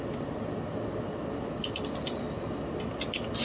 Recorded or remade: recorded